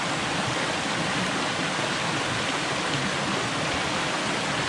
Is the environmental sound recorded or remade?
recorded